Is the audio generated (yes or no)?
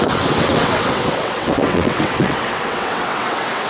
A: yes